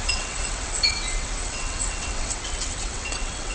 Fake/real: fake